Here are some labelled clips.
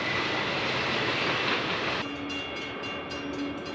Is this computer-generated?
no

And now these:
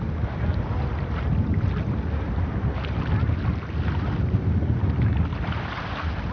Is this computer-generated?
no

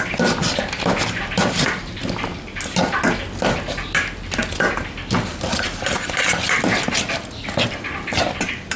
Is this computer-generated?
no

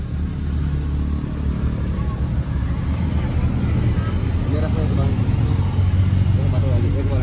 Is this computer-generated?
no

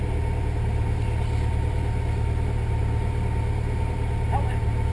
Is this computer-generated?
no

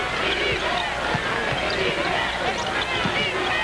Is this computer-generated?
no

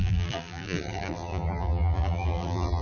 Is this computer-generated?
yes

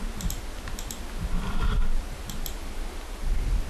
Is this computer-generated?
no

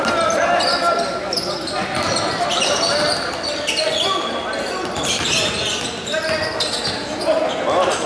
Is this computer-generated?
no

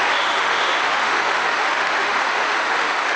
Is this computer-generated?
yes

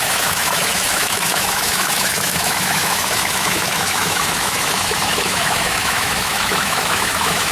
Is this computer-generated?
yes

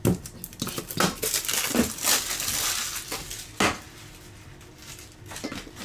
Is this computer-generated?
no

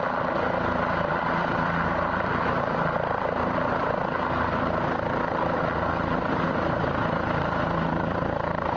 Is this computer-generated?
yes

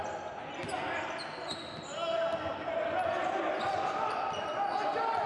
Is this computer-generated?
no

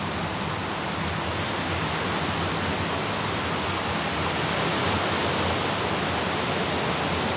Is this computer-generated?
no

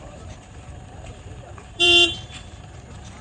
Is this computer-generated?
yes